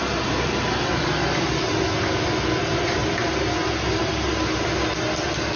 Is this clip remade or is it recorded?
recorded